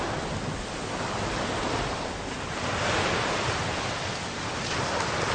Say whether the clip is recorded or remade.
recorded